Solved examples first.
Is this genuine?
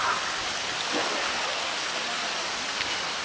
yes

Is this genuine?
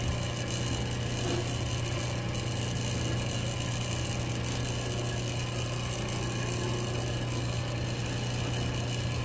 yes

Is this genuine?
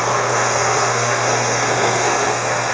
no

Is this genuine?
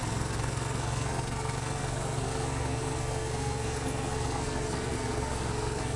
no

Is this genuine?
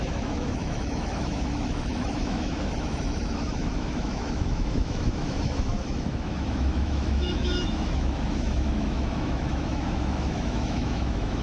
no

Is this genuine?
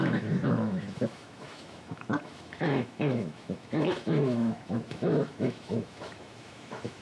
no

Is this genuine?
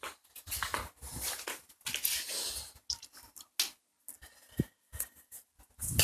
yes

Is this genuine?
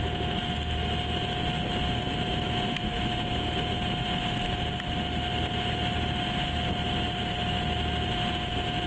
yes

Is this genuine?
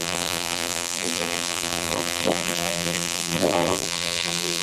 no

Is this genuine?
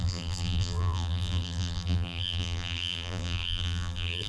no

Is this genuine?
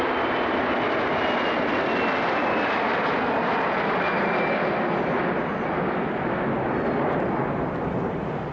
yes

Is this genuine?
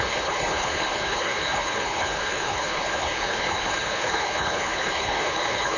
no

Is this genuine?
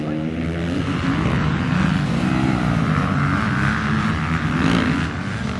yes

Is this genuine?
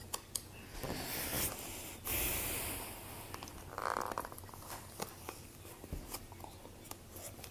yes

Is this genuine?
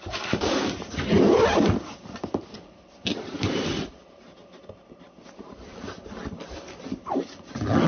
no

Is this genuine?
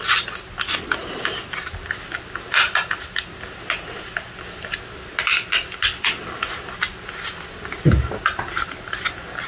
yes